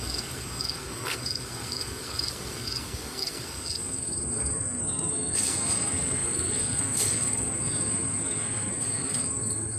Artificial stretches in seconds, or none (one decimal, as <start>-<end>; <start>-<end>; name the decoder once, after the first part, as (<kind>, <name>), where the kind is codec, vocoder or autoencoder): 0.0-9.8 (codec, SNAC)